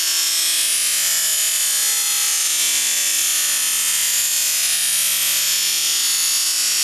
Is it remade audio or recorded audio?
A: recorded